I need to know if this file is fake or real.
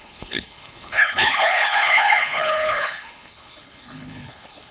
fake